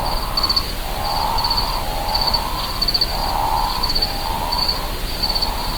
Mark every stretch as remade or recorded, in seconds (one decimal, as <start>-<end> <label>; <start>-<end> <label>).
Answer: 0.0-3.2 recorded; 3.2-4.6 remade; 4.6-5.8 recorded